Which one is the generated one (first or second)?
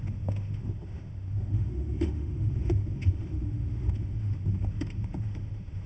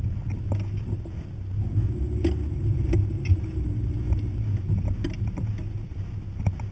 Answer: first